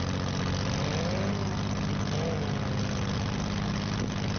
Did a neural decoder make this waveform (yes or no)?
no